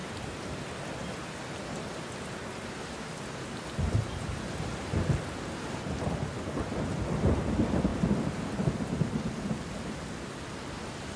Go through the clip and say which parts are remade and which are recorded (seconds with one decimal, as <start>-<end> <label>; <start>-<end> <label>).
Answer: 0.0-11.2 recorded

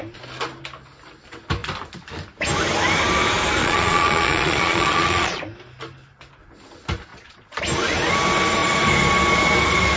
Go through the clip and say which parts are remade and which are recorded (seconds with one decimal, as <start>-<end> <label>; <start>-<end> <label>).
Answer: 0.0-3.6 recorded; 3.6-5.4 remade; 5.4-7.1 recorded; 7.1-7.6 remade; 7.6-10.0 recorded

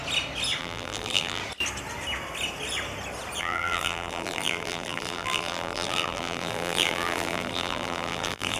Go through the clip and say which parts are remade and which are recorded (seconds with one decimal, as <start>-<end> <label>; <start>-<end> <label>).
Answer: 0.0-0.6 recorded; 0.6-1.4 remade; 1.4-3.4 recorded; 3.4-8.6 remade

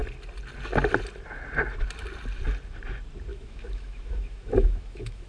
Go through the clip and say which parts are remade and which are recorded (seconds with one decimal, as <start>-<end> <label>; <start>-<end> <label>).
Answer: 0.0-3.3 recorded; 3.3-5.3 remade

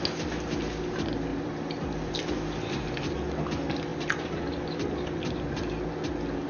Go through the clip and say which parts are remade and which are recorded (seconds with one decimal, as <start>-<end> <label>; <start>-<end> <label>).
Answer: 0.0-1.3 recorded; 1.3-2.3 remade; 2.3-3.9 recorded; 3.9-5.2 remade; 5.2-6.5 recorded